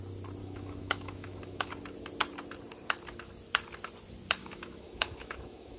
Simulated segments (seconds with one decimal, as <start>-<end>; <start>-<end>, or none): 0.4-1.7; 4.4-5.8